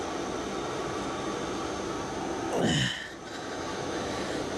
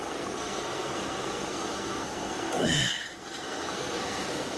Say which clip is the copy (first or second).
second